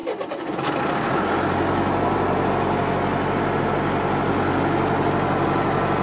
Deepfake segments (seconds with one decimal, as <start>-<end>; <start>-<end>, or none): none